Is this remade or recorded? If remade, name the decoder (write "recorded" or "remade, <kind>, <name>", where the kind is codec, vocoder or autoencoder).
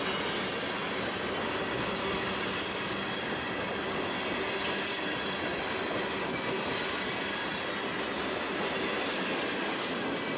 recorded